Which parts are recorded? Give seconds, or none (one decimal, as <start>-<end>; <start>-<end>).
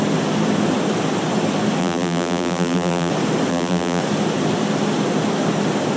0.0-1.8; 3.1-3.5; 4.0-6.0